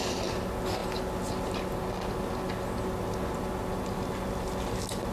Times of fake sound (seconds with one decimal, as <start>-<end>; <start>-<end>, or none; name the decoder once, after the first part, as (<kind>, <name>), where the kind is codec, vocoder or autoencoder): none

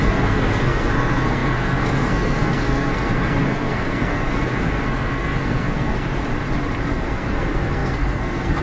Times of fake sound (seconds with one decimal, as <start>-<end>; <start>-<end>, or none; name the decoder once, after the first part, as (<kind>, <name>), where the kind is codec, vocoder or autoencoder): 0.0-6.2 (codec, SNAC); 6.8-8.6

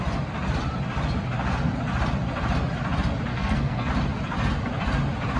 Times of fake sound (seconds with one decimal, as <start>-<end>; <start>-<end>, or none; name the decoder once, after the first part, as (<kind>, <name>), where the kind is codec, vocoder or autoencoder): 3.3-3.9 (codec, SNAC)

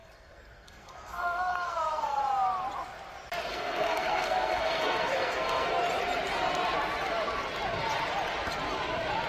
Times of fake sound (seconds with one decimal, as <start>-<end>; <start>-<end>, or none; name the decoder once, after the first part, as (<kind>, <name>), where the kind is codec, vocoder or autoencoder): 0.0-2.2 (codec, SNAC); 3.5-5.7

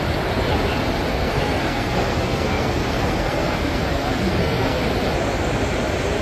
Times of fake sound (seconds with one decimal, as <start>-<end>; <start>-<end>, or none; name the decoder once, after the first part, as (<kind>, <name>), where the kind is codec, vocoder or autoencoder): 1.1-4.8 (codec, SNAC)

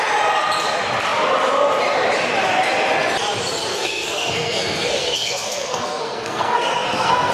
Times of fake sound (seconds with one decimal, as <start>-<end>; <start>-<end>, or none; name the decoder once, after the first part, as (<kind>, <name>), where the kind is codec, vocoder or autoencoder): 3.7-7.3 (codec, SNAC)